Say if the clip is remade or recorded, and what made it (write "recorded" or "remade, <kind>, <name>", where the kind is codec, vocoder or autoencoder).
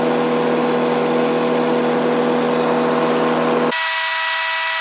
recorded